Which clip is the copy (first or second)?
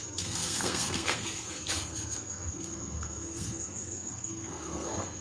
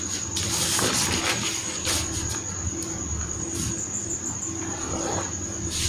first